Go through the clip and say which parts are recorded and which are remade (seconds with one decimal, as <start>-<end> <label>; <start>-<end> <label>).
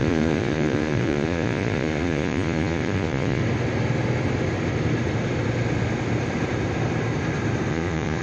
0.0-3.4 remade; 3.4-7.7 recorded; 7.7-8.2 remade